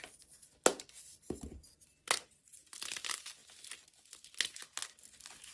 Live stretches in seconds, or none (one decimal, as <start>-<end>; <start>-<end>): 0.0-5.5